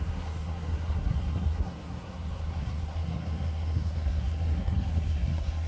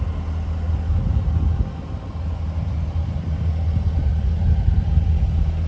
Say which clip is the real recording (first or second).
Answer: second